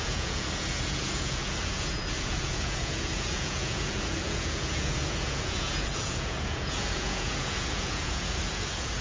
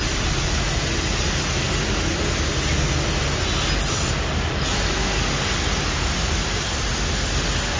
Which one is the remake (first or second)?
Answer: first